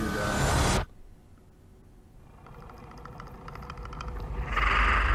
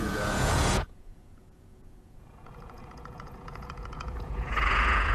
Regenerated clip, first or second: second